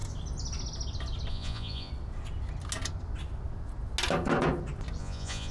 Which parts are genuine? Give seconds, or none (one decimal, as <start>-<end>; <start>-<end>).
0.0-1.3; 1.9-5.0